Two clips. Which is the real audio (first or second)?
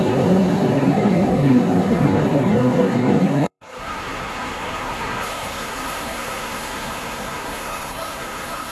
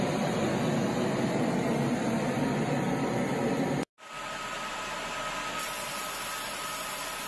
second